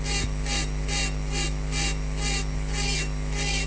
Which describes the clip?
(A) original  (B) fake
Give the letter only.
A